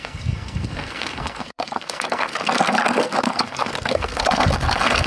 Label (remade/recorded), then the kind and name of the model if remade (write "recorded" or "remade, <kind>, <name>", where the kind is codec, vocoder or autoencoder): remade, codec, SNAC